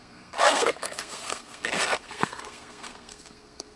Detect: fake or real fake